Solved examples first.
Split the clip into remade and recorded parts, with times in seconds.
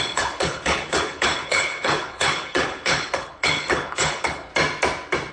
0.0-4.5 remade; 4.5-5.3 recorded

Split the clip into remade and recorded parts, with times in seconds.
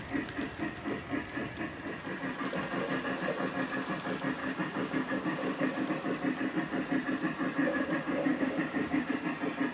0.0-4.4 recorded; 4.4-5.9 remade; 5.9-7.6 recorded; 7.6-9.1 remade; 9.1-9.7 recorded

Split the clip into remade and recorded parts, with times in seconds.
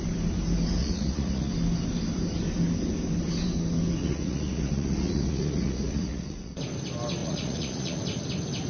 0.0-0.8 recorded; 0.8-1.5 remade; 1.5-4.0 recorded; 4.0-6.6 remade; 6.6-7.2 recorded; 7.2-8.0 remade; 8.0-8.7 recorded